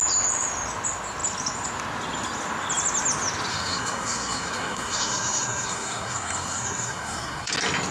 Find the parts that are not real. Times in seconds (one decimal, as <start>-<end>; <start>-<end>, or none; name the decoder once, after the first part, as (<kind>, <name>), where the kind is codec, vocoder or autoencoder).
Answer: 3.5-7.5 (codec, SNAC)

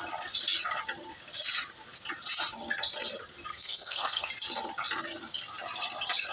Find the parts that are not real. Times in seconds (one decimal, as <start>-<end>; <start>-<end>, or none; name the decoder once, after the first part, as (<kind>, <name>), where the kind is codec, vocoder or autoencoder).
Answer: 3.5-4.3 (codec, SNAC)

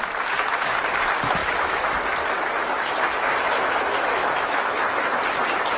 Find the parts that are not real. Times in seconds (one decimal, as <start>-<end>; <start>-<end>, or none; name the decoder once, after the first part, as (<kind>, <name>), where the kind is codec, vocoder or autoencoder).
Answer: 1.4-2.0 (autoencoder, DAC-VAE); 2.6-5.2

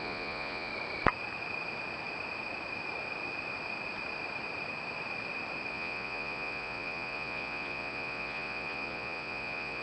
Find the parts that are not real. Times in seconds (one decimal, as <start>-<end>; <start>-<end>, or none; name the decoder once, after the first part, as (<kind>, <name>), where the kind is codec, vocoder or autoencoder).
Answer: 0.0-0.7 (vocoder, Vocos); 5.7-9.8

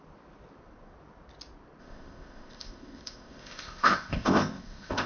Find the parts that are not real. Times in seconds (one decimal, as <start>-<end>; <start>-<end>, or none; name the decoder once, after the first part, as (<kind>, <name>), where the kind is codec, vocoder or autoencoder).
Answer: 1.8-5.1 (codec, ZipCodec)

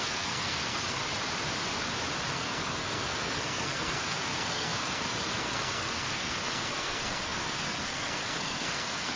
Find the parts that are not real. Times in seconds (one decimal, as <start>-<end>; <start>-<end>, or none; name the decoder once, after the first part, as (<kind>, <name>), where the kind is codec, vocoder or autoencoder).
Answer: 0.0-1.0 (codec, SNAC); 2.3-9.2

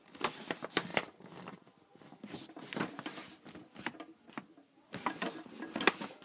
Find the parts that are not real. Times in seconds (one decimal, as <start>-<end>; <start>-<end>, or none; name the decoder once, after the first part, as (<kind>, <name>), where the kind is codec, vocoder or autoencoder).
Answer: none

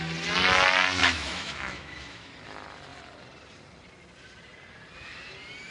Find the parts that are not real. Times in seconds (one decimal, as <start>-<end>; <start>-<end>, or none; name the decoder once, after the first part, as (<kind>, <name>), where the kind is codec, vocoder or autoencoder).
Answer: 1.0-2.3 (autoencoder, DAC-VAE)